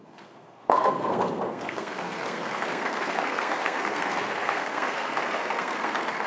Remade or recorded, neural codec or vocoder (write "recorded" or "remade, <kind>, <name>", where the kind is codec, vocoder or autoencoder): remade, codec, SNAC